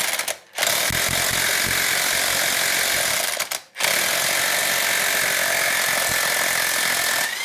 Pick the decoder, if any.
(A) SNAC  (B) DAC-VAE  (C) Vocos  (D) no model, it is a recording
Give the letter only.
D